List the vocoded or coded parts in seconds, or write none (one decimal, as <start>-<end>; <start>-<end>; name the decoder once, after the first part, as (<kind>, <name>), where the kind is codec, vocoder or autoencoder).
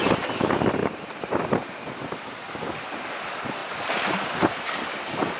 none